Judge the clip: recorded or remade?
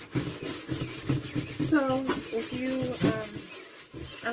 recorded